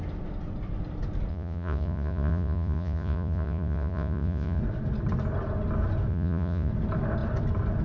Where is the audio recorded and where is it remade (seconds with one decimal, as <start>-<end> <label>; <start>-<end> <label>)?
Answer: 0.0-1.3 recorded; 1.3-4.6 remade; 4.6-6.1 recorded; 6.1-6.7 remade; 6.7-7.8 recorded